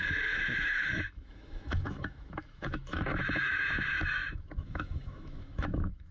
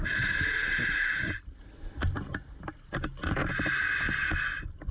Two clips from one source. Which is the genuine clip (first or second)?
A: second